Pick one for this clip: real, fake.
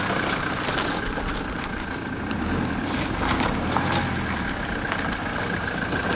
real